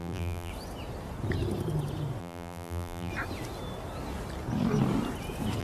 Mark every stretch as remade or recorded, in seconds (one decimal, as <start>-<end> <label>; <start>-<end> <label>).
0.0-0.5 remade; 0.5-2.2 recorded; 2.2-3.1 remade; 3.1-5.6 recorded